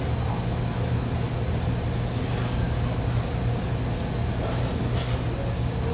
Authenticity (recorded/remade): recorded